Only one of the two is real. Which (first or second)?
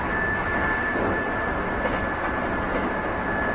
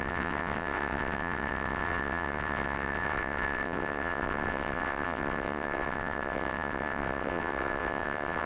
first